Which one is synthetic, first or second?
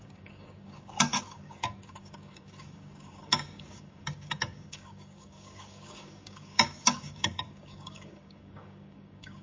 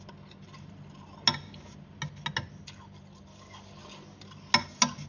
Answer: first